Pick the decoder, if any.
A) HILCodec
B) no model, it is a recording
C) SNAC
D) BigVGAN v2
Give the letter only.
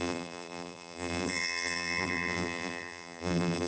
D